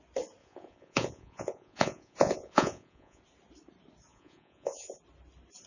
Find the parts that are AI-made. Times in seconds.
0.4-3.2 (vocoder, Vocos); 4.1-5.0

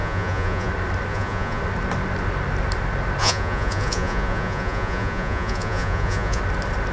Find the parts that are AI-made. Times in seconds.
0.0-0.7 (vocoder, Vocos); 1.1-1.6; 3.2-6.4

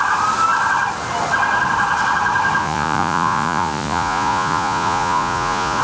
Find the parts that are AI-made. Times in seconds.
2.6-5.8 (vocoder, Vocos)

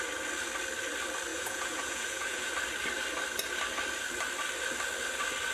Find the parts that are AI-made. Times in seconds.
1.3-2.5 (vocoder, Vocos)

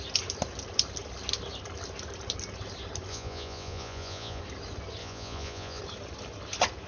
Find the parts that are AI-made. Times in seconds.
3.1-4.4 (vocoder, Vocos); 5.0-5.8

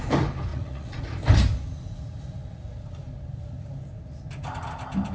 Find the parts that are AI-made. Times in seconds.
0.5-1.0 (vocoder, Vocos)

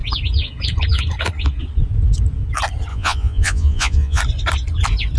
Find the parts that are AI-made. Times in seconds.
2.9-4.2 (vocoder, Vocos)

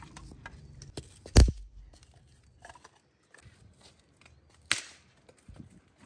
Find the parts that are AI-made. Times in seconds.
none